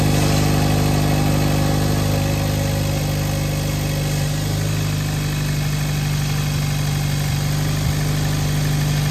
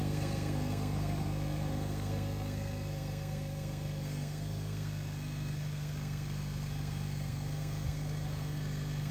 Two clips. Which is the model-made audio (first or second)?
second